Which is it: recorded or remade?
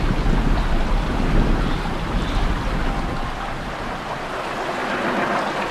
recorded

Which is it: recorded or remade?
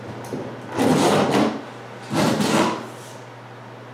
recorded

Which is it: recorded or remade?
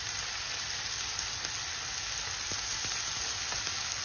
recorded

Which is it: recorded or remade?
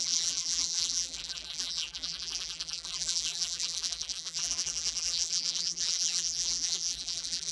remade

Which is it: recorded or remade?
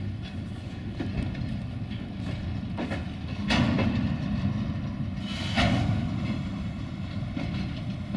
recorded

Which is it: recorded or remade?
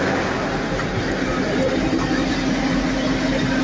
recorded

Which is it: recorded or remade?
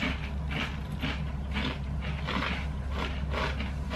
recorded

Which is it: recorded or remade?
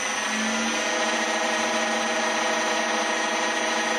recorded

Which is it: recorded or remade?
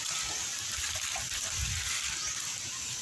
recorded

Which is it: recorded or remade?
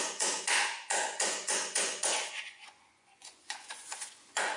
remade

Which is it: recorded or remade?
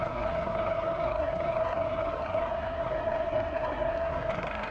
remade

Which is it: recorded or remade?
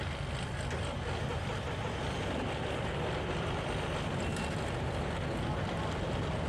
recorded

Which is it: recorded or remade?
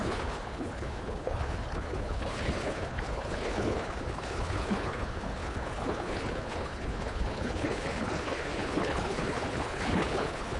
remade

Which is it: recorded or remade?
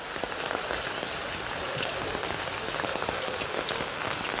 recorded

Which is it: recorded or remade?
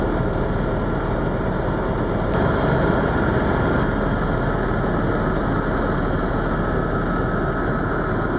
recorded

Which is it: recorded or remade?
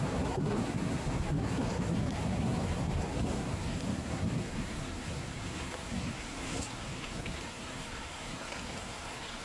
remade